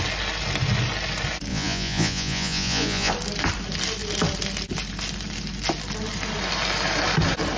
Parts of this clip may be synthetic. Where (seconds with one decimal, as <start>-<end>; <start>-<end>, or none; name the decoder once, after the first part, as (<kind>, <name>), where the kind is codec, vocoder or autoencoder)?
1.5-3.1 (vocoder, Vocos)